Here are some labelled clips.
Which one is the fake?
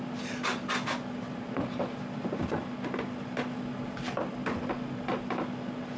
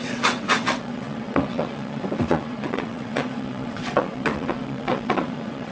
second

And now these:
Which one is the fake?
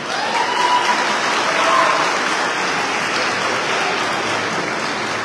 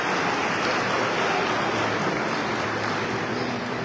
second